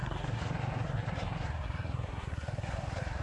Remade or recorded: remade